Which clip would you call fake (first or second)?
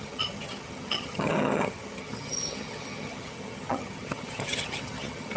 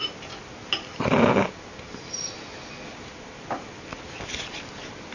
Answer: first